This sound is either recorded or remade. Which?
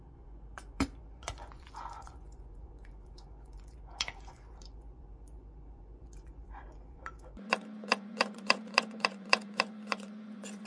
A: remade